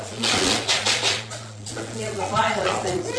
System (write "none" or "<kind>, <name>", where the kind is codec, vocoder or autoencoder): vocoder, Vocos